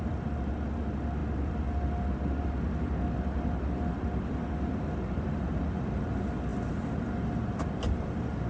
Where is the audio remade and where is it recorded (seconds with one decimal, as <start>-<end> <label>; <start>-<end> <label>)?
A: 0.0-8.5 recorded